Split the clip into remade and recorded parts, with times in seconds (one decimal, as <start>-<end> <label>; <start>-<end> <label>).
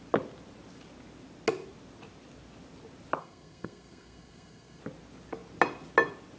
0.0-3.2 recorded; 3.2-4.8 remade; 4.8-6.4 recorded